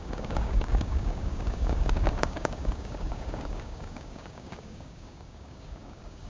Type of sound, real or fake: fake